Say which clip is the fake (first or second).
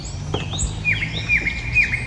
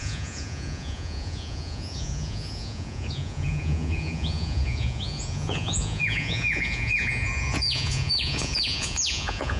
second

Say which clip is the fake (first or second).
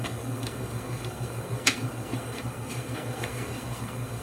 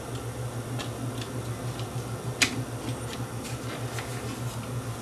first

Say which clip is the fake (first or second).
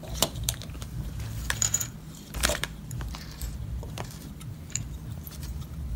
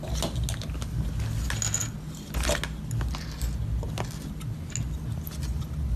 first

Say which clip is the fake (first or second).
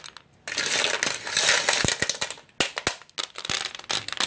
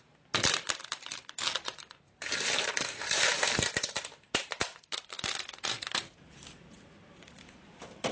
second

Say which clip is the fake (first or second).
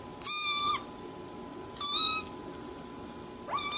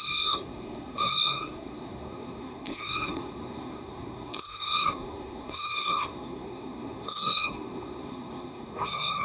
second